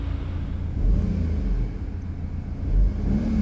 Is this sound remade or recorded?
recorded